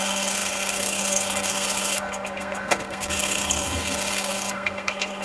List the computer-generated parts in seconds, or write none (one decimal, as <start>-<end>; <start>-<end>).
0.0-5.2

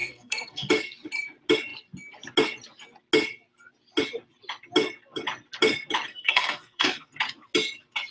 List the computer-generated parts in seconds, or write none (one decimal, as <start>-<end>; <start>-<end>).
0.0-0.7; 6.1-7.1

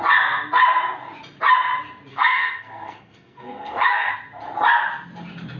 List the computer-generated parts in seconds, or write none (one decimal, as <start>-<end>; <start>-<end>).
2.1-4.1

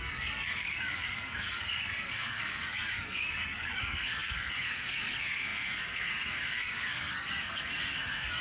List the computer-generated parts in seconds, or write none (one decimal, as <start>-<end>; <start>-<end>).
0.0-8.4

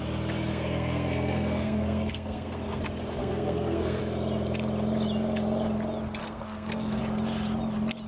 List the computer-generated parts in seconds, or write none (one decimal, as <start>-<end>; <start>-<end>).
0.5-2.8; 3.2-4.0; 6.2-7.0

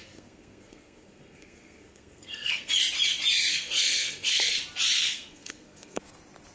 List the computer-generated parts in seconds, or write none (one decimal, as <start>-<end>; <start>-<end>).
0.0-2.7; 3.5-4.6; 5.0-6.0